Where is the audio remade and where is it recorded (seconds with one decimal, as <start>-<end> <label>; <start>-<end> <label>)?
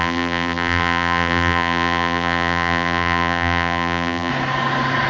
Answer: 0.0-4.3 remade; 4.3-5.1 recorded